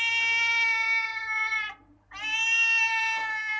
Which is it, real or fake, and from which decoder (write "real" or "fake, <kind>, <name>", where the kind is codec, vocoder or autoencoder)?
real